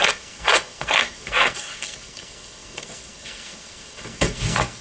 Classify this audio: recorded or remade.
remade